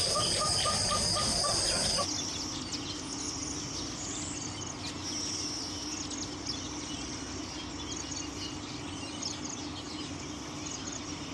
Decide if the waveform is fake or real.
real